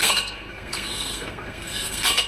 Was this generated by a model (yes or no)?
yes